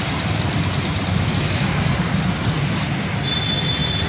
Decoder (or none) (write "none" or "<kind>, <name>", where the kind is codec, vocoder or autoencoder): none